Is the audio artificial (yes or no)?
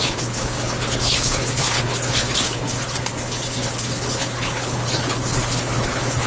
yes